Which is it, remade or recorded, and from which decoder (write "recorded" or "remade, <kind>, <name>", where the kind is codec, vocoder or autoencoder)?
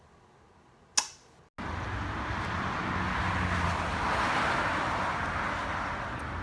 recorded